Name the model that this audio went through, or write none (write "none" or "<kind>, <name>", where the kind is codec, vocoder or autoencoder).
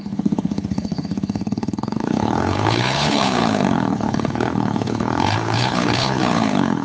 codec, HILCodec